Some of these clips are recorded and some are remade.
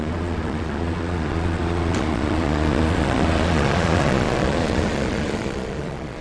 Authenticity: remade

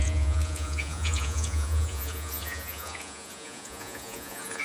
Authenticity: remade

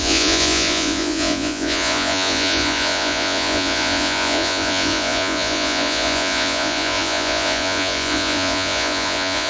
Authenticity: remade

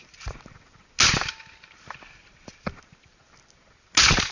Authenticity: recorded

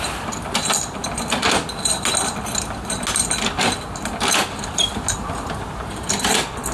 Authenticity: recorded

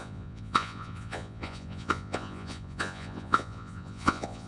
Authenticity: remade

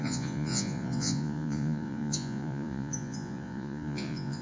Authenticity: remade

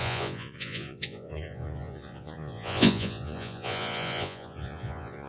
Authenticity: remade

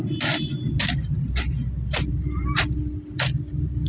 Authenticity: recorded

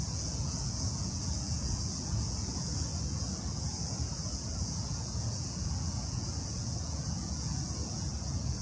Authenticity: remade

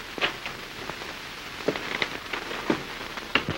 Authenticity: recorded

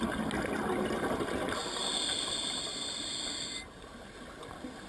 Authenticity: recorded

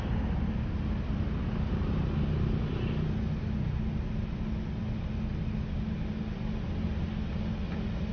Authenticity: recorded